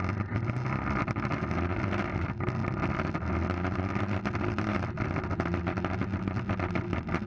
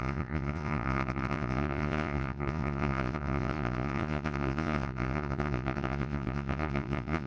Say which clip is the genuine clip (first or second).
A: first